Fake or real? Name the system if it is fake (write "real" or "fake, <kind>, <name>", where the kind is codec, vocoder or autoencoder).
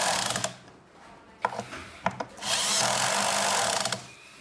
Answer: real